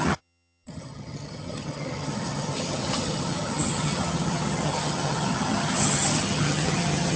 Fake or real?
fake